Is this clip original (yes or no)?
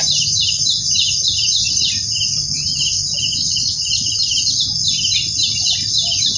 yes